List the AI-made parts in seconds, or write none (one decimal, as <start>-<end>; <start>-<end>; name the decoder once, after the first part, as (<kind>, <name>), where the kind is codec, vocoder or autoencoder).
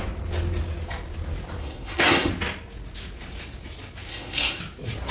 1.6-2.3 (codec, SNAC); 4.1-4.6